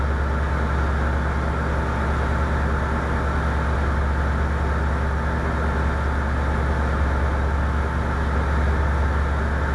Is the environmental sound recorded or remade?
recorded